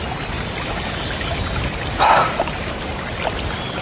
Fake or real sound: real